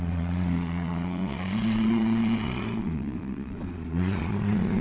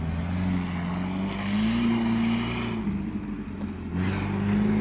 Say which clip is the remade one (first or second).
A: first